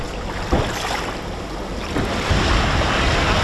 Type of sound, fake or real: real